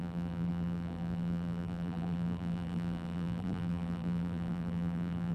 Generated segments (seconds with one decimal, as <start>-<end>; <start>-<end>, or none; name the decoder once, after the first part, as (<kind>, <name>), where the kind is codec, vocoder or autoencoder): 0.0-5.3 (vocoder, BigVGAN v2)

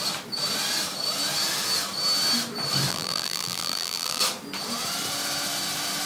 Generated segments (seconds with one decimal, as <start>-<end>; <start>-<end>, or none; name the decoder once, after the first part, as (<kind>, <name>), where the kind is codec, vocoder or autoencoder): 2.9-4.2 (vocoder, BigVGAN v2)

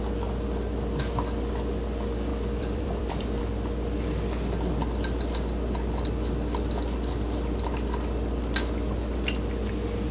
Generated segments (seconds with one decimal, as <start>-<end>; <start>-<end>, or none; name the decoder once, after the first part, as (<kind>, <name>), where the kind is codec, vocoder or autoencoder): 2.3-3.4 (vocoder, BigVGAN v2)

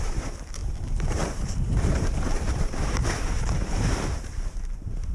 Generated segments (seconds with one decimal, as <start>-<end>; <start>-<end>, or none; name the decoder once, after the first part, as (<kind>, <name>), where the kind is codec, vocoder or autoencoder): 0.0-5.1 (vocoder, BigVGAN v2)

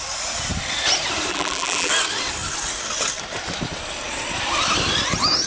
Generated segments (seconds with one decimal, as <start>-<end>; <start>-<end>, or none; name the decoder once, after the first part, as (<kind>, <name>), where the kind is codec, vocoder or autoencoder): 1.3-1.9 (vocoder, BigVGAN v2)

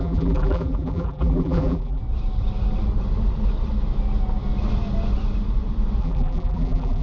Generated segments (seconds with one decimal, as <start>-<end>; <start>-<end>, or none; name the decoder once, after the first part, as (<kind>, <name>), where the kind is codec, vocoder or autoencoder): 0.0-2.0 (vocoder, BigVGAN v2); 6.0-7.0

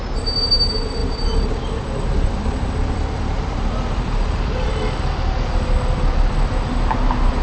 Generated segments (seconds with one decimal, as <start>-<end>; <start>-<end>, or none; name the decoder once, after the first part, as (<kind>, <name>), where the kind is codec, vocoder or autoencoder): 1.0-4.8 (vocoder, BigVGAN v2)

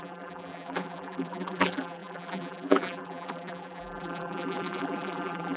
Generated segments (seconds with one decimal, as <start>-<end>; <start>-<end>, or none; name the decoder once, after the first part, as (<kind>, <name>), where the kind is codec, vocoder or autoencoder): 0.0-5.6 (vocoder, BigVGAN v2)